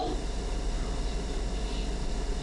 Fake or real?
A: real